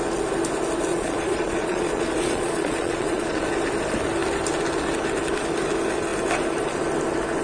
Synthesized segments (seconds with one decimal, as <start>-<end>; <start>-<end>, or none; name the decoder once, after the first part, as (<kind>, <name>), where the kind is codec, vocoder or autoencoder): 0.9-3.4 (vocoder, Vocos)